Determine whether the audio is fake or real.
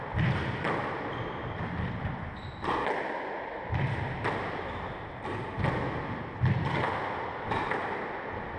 real